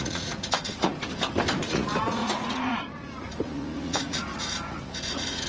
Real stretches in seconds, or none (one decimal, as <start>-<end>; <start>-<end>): 0.9-1.6